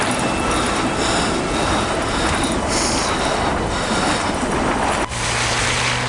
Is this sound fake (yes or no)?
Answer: no